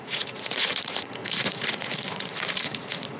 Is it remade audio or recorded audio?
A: remade